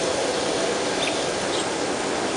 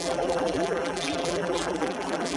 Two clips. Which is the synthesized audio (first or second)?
second